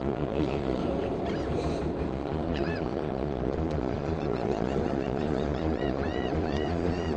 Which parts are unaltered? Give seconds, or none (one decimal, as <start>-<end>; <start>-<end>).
0.8-2.1

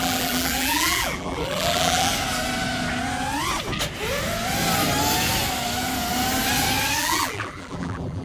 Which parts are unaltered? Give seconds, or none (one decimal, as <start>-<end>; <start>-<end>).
2.1-7.0

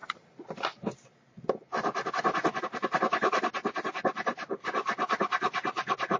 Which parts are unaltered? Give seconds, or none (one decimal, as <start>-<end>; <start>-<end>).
0.5-4.6

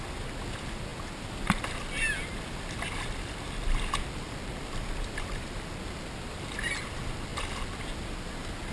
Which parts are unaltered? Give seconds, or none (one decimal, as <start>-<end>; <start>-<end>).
0.0-8.7